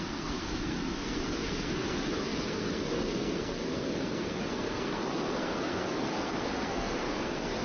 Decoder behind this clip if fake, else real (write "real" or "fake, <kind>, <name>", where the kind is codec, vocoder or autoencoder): fake, codec, SNAC